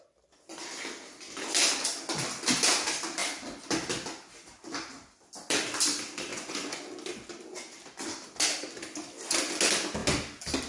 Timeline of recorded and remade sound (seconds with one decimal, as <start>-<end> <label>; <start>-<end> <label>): 0.0-6.3 recorded; 6.3-6.9 remade; 6.9-10.7 recorded